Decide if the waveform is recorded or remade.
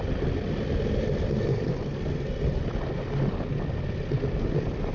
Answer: recorded